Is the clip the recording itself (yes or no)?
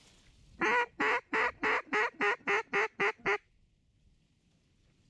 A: yes